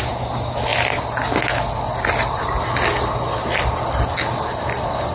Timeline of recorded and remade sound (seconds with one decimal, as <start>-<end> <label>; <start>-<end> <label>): 0.0-5.1 recorded